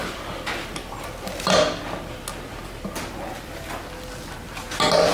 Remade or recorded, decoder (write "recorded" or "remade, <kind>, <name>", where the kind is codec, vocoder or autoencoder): recorded